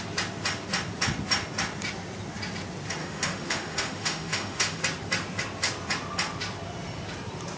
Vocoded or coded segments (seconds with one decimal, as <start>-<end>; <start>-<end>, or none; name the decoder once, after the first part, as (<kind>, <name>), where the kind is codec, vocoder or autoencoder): 3.0-4.8 (autoencoder, DAC-VAE)